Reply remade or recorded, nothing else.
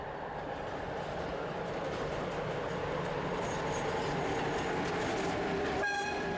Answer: recorded